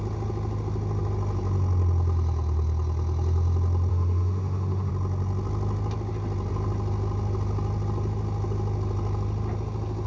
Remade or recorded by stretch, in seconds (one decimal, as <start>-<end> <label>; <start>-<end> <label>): 0.0-3.9 recorded; 3.9-4.9 remade; 4.9-10.1 recorded